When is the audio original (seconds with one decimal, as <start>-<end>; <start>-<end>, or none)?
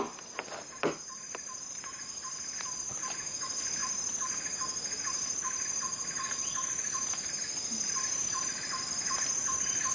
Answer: 0.0-9.9